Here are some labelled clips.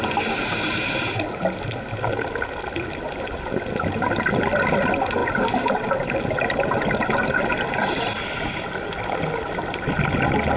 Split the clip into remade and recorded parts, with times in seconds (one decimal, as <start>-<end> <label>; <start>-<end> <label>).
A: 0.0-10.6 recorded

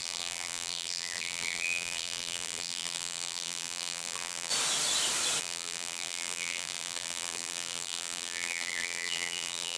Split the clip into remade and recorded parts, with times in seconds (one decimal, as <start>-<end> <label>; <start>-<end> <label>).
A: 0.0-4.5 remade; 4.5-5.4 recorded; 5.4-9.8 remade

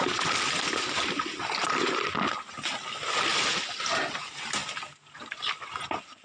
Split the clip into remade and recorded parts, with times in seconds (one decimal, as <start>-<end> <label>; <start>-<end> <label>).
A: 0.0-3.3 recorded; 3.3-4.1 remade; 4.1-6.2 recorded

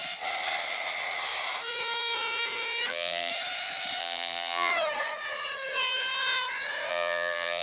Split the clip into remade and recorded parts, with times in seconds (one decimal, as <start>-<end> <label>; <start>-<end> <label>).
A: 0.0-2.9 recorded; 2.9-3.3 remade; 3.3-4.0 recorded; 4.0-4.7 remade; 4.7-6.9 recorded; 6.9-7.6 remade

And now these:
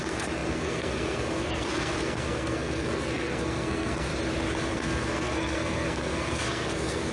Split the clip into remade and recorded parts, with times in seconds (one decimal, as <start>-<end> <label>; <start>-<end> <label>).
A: 0.0-4.1 remade; 4.1-4.7 recorded; 4.7-7.1 remade